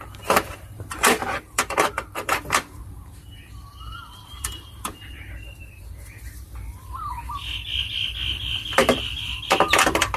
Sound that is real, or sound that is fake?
fake